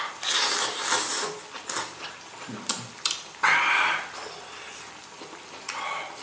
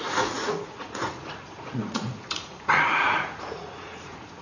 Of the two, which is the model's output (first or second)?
second